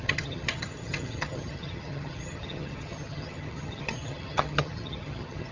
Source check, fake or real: fake